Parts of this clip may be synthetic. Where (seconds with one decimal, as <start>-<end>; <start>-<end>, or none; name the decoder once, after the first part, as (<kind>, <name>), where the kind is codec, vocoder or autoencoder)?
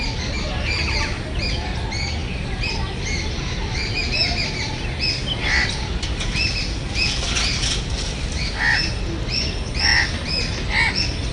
none